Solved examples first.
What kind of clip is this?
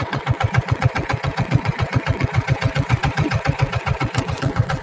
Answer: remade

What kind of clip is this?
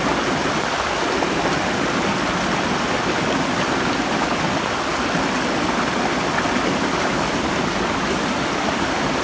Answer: recorded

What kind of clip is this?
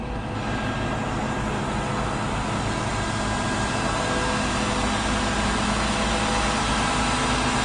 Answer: recorded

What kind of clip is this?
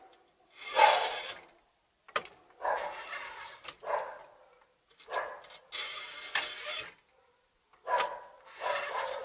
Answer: recorded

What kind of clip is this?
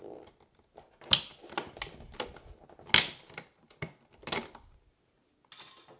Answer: recorded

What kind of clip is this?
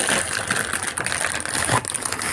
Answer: recorded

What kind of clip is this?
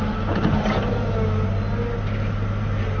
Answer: recorded